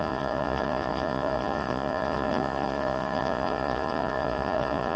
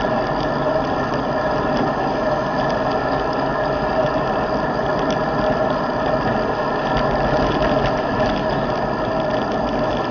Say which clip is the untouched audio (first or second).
second